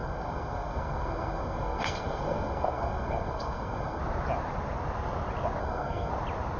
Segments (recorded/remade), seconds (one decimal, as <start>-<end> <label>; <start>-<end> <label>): 0.0-4.0 remade; 4.0-5.6 recorded; 5.6-6.1 remade; 6.1-6.6 recorded